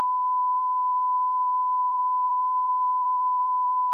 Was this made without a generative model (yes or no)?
no